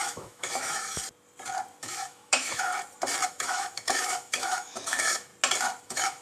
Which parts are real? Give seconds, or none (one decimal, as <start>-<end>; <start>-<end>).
1.0-1.8; 2.7-3.3; 5.3-5.8